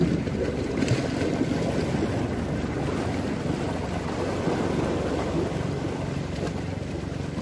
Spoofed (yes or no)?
no